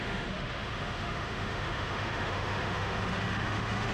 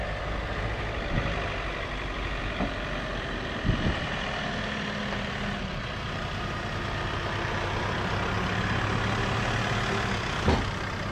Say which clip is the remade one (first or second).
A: first